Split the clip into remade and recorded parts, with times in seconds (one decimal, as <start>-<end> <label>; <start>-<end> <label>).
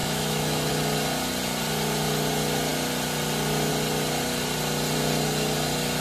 0.0-0.7 remade; 0.7-6.0 recorded